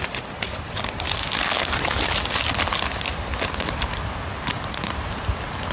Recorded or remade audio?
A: recorded